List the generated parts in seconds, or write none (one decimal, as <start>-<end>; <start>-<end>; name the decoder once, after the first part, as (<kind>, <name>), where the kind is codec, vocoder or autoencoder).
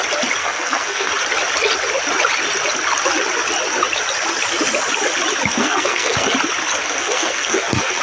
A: 0.4-1.1 (codec, SNAC); 5.5-6.3; 6.8-8.0